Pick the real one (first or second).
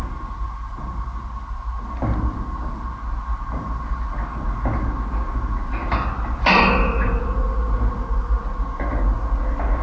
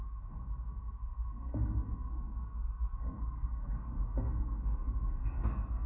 first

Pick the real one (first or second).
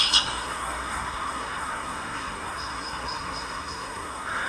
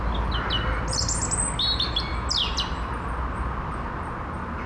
second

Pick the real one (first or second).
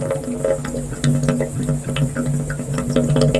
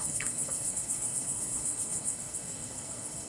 first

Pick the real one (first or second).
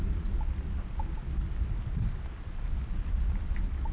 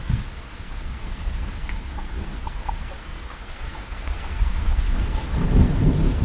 first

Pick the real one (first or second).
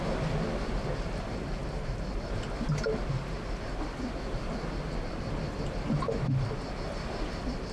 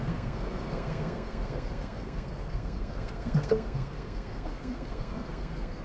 first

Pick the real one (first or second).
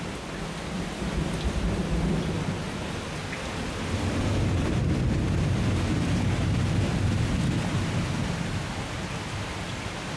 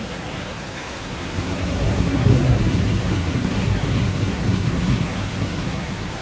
first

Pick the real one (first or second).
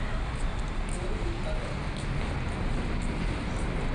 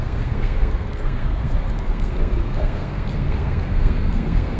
first